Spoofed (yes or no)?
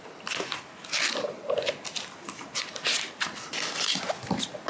no